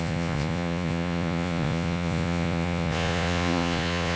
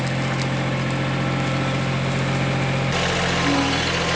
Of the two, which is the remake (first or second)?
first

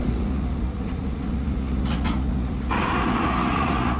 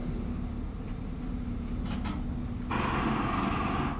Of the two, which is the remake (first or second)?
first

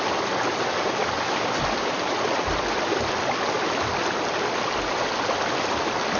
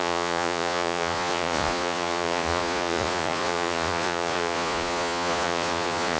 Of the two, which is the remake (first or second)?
second